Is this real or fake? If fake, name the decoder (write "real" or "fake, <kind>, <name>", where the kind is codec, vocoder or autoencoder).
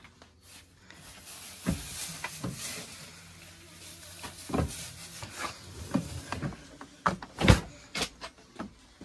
real